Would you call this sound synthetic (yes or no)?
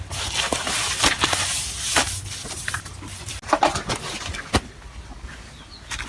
no